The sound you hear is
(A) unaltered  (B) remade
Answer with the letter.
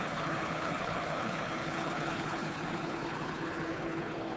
B